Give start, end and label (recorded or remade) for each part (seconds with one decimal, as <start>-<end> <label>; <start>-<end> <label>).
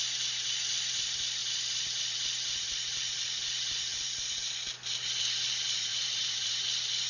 0.0-5.9 recorded; 5.9-6.6 remade; 6.6-7.1 recorded